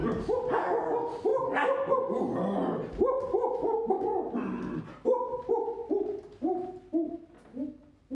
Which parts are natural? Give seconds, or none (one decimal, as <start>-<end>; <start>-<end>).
0.0-8.1